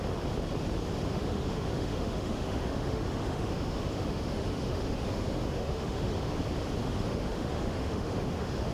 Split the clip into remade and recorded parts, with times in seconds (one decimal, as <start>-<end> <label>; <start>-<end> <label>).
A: 0.0-1.1 recorded; 1.1-6.3 remade; 6.3-6.8 recorded; 6.8-8.7 remade